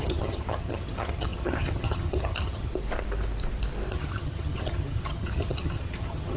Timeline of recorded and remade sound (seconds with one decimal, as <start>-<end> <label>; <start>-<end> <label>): 0.0-2.7 remade; 2.7-3.9 recorded; 3.9-6.4 remade